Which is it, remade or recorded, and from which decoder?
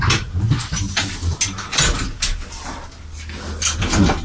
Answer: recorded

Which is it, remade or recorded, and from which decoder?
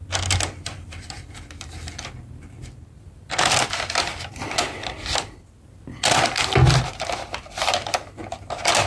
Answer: remade, vocoder, BigVGAN v2